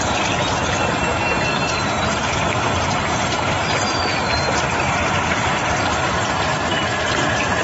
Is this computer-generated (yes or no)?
no